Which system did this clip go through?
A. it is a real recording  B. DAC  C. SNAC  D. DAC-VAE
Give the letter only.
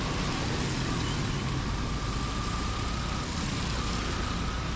A